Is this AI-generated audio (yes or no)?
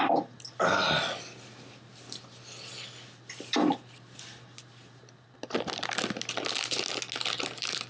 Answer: no